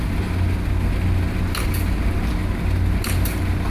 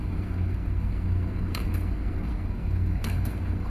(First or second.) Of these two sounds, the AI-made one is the second